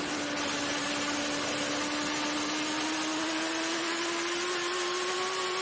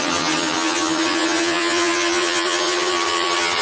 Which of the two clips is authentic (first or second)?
first